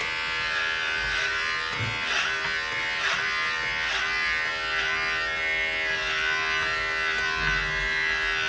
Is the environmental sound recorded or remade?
recorded